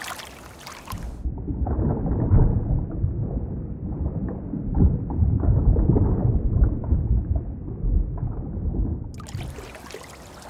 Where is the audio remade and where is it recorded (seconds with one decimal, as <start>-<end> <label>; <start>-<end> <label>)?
0.0-10.5 recorded